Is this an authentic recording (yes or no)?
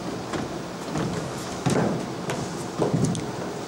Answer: yes